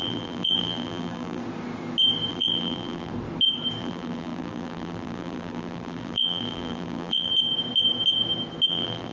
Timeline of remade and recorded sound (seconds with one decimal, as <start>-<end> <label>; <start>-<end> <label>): 0.0-1.4 remade; 1.4-2.3 recorded; 2.3-3.1 remade; 3.1-3.8 recorded; 3.8-7.3 remade; 7.3-8.7 recorded; 8.7-9.1 remade